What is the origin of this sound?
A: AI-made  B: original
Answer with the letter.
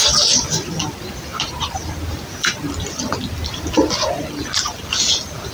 B